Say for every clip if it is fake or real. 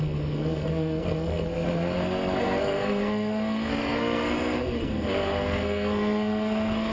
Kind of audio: fake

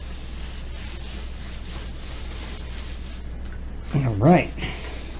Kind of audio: real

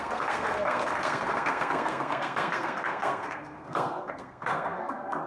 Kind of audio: fake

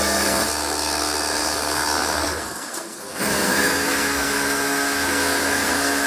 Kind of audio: fake